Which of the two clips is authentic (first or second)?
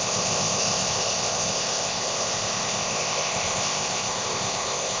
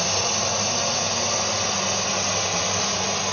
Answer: second